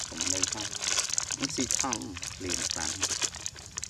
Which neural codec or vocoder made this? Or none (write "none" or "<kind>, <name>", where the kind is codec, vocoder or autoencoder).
none